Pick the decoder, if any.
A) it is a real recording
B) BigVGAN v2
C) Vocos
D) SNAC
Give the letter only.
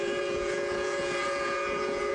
C